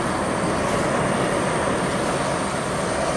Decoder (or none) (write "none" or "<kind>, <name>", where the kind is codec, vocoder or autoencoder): none